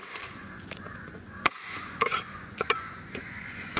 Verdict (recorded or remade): remade